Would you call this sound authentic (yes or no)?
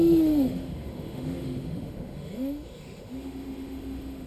no